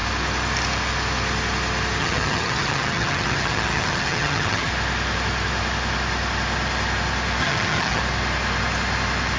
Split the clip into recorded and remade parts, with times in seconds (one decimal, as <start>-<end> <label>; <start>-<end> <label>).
0.0-2.0 recorded; 2.0-4.7 remade; 4.7-7.4 recorded; 7.4-8.0 remade; 8.0-9.4 recorded